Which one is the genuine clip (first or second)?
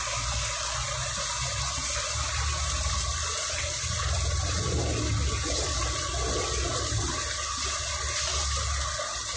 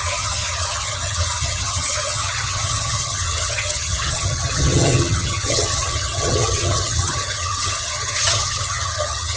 first